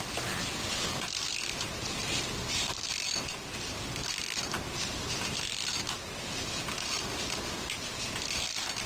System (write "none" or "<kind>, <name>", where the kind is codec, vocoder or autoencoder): none